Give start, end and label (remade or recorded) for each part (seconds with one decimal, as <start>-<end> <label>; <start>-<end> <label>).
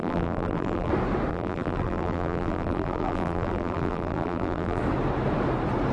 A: 0.0-0.9 remade; 0.9-1.3 recorded; 1.3-4.8 remade; 4.8-5.9 recorded